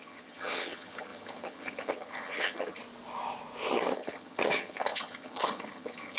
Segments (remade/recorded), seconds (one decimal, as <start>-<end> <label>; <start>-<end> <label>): 0.0-2.8 remade; 2.8-3.7 recorded; 3.7-6.2 remade